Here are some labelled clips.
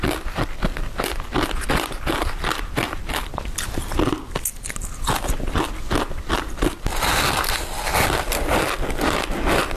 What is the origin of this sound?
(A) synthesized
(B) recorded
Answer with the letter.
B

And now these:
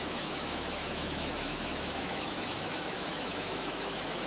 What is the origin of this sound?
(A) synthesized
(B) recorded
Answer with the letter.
A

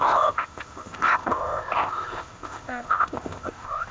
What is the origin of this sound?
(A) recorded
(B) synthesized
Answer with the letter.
B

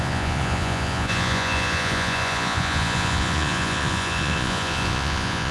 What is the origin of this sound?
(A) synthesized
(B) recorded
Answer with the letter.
A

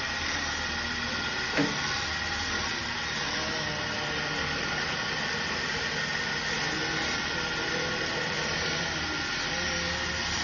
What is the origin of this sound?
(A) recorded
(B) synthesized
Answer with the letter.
A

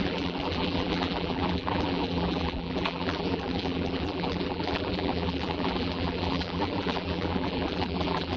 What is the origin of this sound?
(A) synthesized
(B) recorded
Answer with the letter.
A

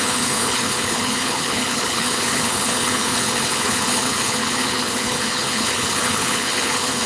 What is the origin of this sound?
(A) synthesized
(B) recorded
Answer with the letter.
A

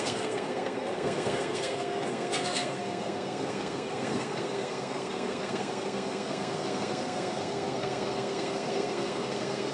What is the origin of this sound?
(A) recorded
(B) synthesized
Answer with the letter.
B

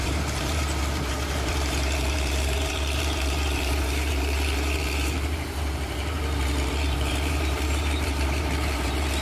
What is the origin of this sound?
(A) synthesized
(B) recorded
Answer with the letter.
A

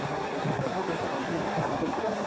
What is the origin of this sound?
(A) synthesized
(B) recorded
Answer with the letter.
A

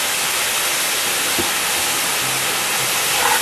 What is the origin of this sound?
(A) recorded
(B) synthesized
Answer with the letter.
A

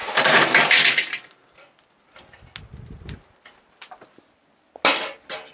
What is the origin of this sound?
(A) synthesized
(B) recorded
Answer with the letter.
B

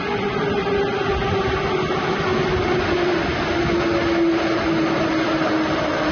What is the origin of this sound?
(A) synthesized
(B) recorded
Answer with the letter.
B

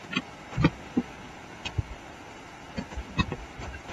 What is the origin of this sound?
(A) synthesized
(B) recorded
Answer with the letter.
B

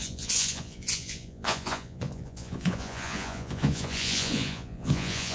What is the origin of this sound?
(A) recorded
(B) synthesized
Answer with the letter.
B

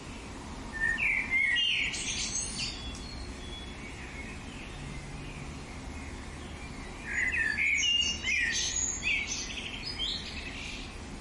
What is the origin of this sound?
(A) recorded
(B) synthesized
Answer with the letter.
A